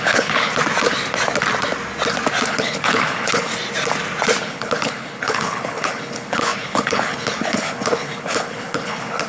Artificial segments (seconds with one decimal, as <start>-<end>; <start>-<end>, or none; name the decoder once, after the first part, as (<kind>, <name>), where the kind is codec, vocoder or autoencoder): 0.0-0.5 (codec, HILCodec); 2.5-3.5; 4.4-9.3